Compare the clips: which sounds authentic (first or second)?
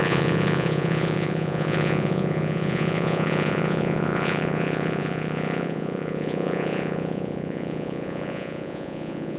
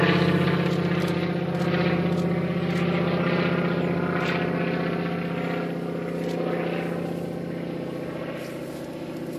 second